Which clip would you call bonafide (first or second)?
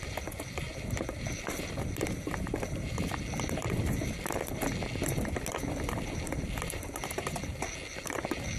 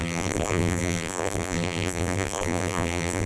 first